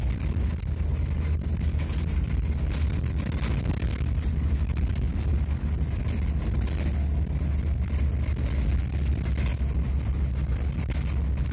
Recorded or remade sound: recorded